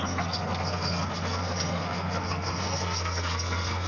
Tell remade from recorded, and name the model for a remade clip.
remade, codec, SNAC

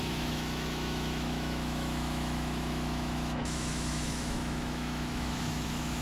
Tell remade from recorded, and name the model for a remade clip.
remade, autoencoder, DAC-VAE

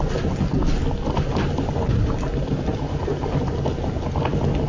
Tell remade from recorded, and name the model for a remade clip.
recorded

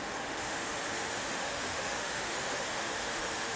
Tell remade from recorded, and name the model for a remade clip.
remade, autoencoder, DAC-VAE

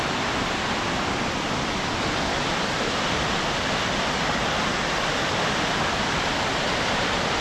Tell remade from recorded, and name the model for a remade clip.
remade, vocoder, BigVGAN v2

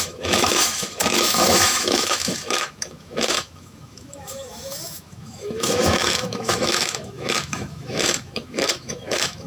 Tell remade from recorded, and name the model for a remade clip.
remade, autoencoder, DAC-VAE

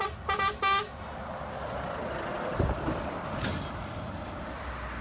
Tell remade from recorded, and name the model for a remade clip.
recorded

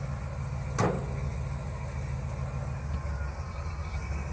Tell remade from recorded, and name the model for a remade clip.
recorded